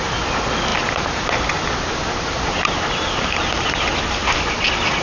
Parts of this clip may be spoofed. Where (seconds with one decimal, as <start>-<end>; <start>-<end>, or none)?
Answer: none